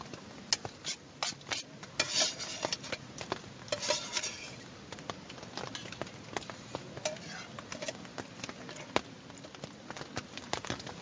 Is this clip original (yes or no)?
yes